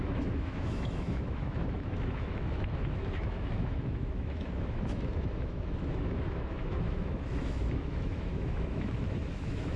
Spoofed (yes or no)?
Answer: yes